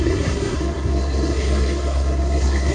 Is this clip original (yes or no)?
no